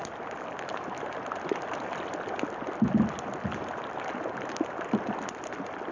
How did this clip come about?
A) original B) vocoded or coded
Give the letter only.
A